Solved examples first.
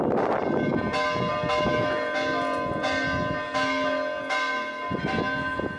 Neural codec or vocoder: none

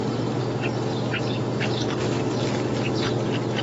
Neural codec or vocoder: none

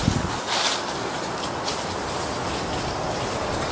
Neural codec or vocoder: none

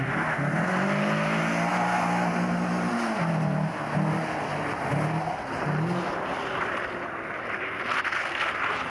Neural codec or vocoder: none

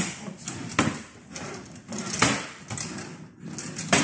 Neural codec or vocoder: none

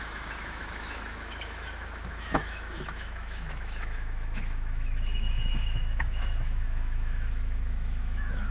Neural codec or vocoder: autoencoder, DAC-VAE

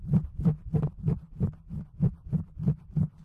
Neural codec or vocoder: none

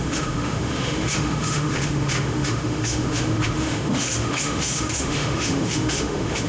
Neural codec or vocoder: autoencoder, DAC-VAE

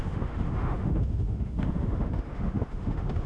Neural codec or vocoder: autoencoder, DAC-VAE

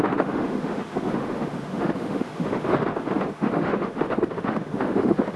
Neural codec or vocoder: autoencoder, DAC-VAE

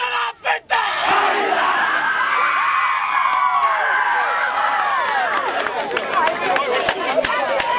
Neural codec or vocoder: none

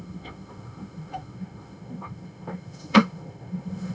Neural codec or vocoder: autoencoder, DAC-VAE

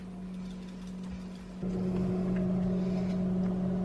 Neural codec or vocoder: none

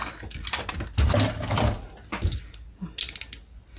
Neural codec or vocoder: none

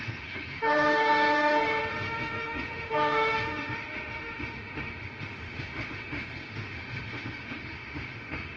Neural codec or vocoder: autoencoder, DAC-VAE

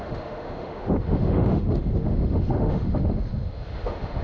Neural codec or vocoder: autoencoder, DAC-VAE